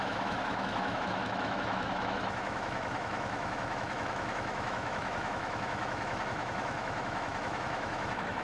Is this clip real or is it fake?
fake